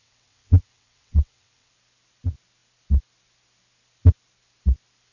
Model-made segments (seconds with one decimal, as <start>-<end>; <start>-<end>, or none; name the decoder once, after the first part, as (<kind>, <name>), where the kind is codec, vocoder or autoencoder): 0.0-1.7 (vocoder, WaveNeXt)